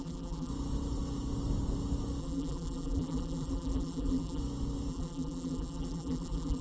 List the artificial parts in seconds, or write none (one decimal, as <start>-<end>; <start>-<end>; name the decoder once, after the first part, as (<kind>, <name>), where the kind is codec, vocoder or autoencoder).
0.0-0.5 (vocoder, BigVGAN v2); 2.2-4.4; 4.9-6.6